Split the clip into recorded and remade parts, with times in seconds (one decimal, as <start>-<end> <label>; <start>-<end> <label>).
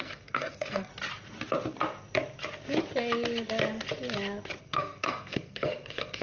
0.0-0.9 remade; 0.9-4.6 recorded; 4.6-6.2 remade